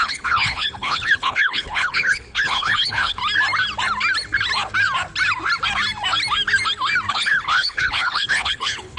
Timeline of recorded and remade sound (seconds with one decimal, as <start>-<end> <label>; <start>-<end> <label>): 0.0-3.2 remade; 3.2-7.1 recorded; 7.1-9.0 remade